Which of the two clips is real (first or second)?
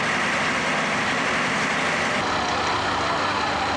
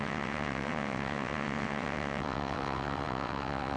first